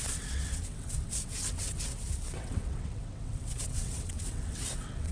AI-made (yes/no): yes